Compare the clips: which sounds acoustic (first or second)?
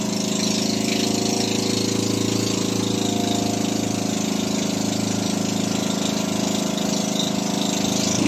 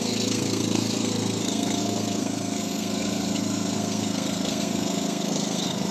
first